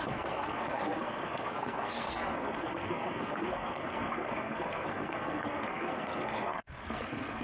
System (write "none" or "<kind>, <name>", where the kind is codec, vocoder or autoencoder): codec, SNAC